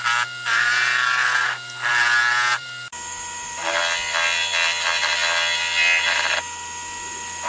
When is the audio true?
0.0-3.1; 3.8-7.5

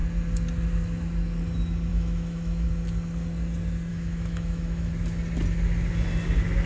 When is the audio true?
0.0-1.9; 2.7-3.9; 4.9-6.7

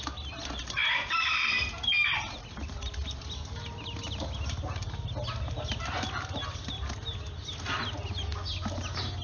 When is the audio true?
0.0-9.2